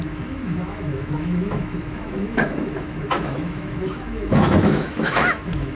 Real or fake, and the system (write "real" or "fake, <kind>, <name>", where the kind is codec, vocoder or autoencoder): fake, autoencoder, DAC-VAE